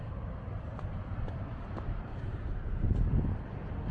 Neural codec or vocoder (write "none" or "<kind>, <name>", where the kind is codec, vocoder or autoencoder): vocoder, BigVGAN v2